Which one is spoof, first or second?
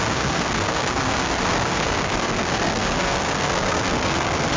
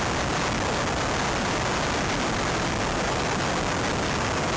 first